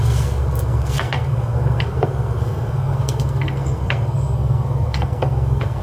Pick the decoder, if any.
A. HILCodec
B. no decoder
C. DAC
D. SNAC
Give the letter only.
D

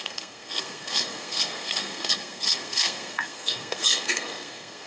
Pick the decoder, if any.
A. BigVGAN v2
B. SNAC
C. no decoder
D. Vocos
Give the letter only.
B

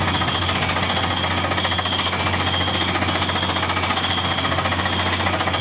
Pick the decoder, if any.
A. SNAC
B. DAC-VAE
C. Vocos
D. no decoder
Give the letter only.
D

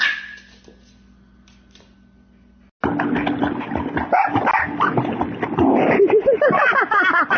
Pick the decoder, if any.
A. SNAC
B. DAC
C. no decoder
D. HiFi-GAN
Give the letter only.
C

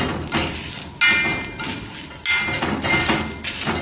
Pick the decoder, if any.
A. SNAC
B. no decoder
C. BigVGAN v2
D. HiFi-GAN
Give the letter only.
B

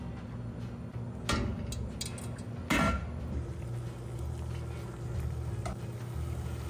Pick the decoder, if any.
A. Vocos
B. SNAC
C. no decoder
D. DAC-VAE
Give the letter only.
C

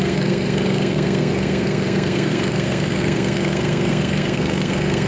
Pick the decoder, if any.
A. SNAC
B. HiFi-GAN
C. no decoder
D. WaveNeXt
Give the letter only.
A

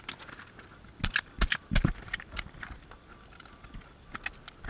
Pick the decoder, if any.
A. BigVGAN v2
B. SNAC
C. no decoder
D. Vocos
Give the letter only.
C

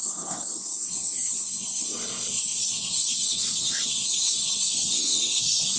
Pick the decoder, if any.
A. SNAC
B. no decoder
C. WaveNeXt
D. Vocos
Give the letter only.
A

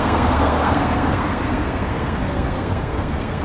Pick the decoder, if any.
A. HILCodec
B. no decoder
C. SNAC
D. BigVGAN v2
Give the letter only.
C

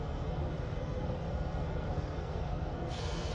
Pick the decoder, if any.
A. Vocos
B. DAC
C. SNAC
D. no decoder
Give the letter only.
C